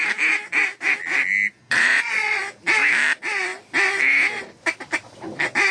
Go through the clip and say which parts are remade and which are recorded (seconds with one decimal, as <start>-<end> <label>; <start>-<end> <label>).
0.0-1.6 recorded; 1.6-2.4 remade; 2.4-5.7 recorded